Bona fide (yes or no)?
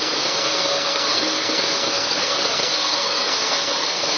no